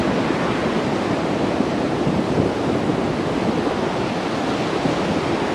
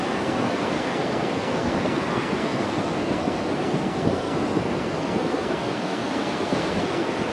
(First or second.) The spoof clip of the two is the second